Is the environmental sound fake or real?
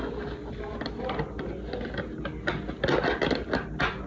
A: real